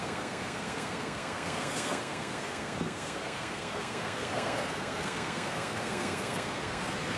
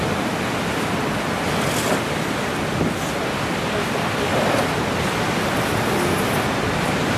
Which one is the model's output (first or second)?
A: first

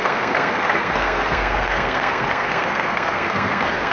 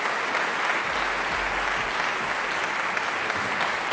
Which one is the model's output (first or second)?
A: first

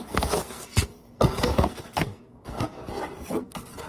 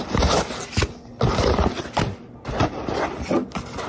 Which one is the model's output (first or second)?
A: first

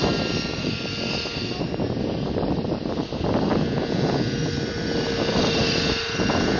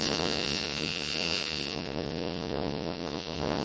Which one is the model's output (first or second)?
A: second